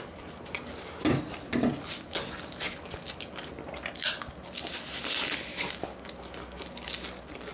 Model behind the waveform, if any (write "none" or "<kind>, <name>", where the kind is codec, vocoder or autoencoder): none